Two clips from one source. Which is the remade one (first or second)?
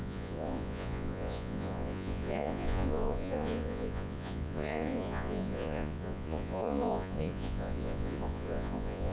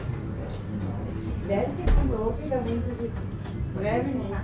first